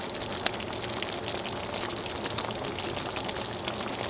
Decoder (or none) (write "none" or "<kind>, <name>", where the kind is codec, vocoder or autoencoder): none